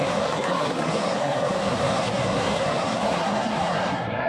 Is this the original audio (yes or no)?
no